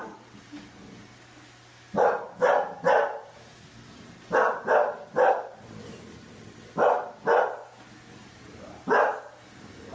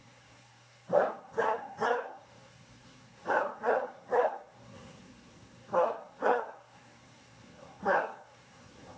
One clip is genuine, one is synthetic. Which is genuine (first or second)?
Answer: first